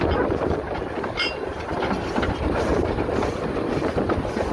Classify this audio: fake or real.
real